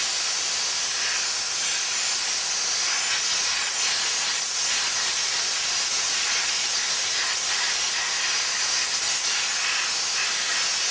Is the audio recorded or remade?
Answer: recorded